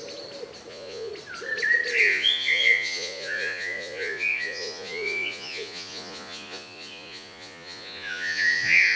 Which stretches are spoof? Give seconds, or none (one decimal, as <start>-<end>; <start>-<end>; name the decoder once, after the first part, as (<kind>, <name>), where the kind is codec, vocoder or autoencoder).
0.7-1.1 (vocoder, Vocos); 2.0-9.0